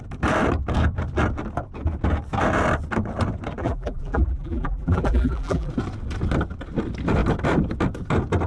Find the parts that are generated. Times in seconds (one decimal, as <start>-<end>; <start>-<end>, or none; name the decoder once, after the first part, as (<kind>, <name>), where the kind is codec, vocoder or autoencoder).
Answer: 3.6-5.7 (vocoder, BigVGAN v2)